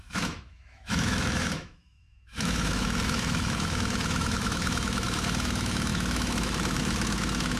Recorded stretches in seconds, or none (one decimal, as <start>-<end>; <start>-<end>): none